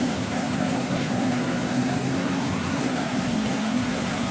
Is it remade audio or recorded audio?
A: remade